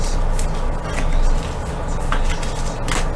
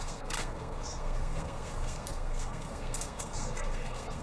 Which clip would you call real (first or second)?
first